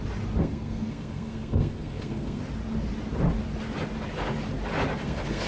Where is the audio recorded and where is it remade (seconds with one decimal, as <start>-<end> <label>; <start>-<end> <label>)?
0.0-0.4 recorded; 0.4-2.4 remade; 2.4-5.0 recorded; 5.0-5.5 remade